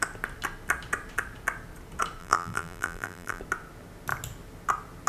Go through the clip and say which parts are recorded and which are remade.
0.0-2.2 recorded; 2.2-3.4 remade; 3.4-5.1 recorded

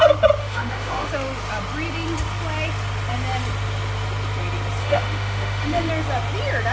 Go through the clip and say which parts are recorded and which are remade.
0.0-0.4 recorded; 0.4-1.1 remade; 1.1-4.8 recorded; 4.8-5.9 remade; 5.9-6.7 recorded